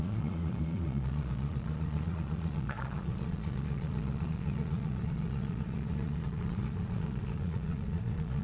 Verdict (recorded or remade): remade